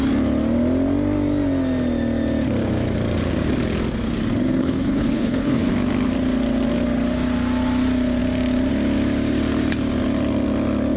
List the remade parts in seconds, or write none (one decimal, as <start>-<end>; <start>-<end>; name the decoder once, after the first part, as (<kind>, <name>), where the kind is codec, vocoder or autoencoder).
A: 4.6-5.7 (codec, HILCodec)